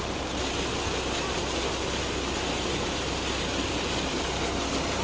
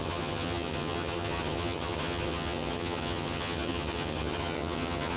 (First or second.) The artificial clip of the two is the second